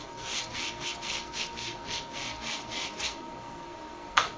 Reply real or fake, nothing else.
fake